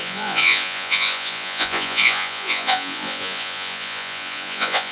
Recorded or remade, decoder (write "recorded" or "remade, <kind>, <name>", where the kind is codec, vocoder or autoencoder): remade, vocoder, Vocos